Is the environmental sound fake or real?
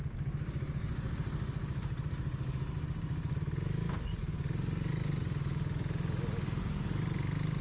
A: real